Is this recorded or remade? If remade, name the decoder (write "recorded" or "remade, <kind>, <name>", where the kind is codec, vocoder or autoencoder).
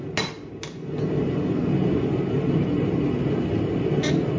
recorded